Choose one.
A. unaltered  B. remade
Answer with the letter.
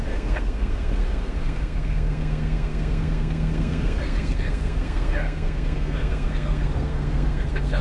B